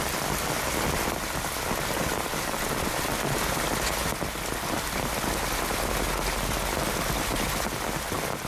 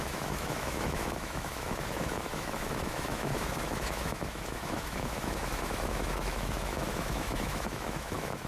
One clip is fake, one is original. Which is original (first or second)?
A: first